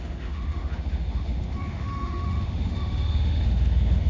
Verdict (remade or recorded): remade